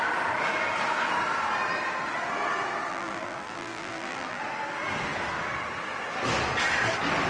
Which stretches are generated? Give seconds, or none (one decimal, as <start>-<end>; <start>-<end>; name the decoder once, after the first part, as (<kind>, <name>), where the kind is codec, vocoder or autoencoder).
2.9-4.4 (vocoder, BigVGAN v2)